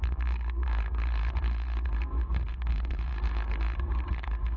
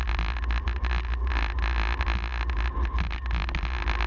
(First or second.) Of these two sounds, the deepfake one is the first